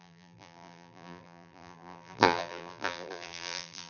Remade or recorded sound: remade